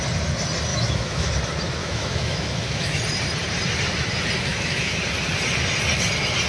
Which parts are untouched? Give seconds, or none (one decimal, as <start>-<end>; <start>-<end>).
0.0-0.7; 1.3-1.8; 3.0-4.5; 5.0-6.5